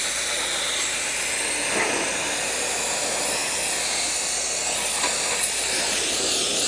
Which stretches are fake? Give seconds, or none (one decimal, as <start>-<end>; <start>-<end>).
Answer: none

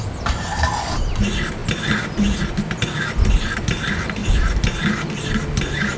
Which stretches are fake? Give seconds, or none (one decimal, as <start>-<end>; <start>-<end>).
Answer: none

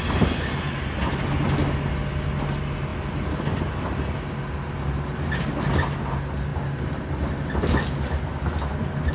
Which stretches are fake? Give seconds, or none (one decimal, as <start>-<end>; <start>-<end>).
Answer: none

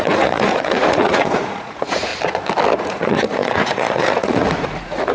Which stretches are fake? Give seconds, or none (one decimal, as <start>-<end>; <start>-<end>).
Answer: 0.0-2.1; 2.8-5.1